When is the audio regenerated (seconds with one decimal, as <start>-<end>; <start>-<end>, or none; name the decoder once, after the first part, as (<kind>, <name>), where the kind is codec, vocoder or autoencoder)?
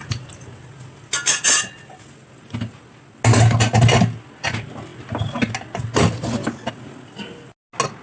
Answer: none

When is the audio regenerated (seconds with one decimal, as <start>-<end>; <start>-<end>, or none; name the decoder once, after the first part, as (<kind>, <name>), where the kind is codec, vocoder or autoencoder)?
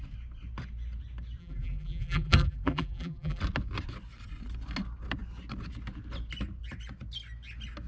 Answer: 1.4-3.4 (vocoder, BigVGAN v2)